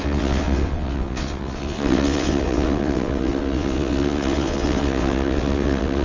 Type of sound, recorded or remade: remade